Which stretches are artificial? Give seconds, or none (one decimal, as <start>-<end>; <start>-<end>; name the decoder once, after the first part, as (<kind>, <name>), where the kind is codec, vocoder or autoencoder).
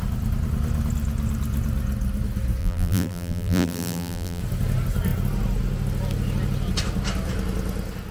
2.6-4.4 (vocoder, BigVGAN v2)